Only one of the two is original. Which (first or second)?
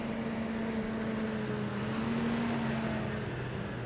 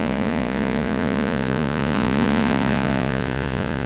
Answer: first